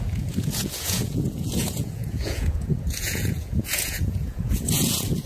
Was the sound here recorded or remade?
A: remade